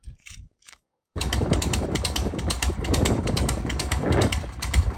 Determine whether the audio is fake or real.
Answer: fake